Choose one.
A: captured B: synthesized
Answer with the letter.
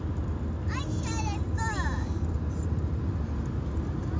A